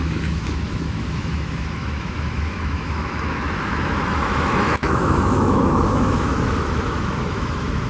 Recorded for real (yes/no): no